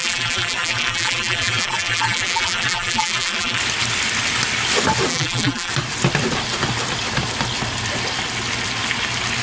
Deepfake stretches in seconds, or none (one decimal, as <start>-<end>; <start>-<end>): 0.0-3.6; 5.1-5.7